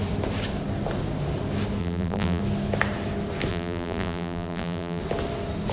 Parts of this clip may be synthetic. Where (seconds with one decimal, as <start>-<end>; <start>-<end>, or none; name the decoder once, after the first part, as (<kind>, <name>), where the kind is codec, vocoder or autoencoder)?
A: 1.8-2.4 (vocoder, BigVGAN v2); 3.5-5.0